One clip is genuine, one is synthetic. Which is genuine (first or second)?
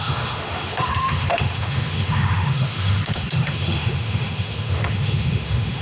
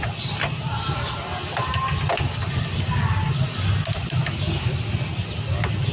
second